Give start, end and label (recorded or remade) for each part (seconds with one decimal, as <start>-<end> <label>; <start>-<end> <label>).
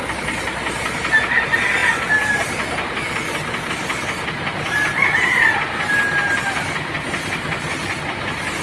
0.0-8.6 recorded